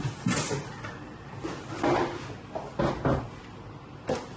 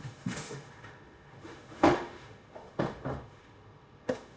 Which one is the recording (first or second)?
first